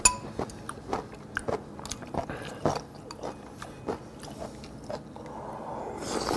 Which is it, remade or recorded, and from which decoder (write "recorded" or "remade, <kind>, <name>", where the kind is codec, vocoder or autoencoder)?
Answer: recorded